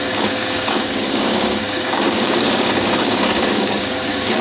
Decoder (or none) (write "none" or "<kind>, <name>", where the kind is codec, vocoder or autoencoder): codec, DAC